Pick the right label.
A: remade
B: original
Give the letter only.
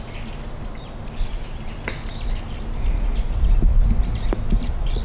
B